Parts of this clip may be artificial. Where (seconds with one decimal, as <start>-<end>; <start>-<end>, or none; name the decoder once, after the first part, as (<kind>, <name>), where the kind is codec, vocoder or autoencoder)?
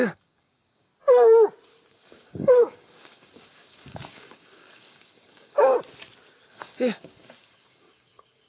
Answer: 0.0-0.9 (codec, DAC); 1.9-5.7; 6.5-8.5